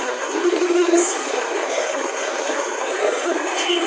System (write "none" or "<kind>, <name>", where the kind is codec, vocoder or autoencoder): codec, SNAC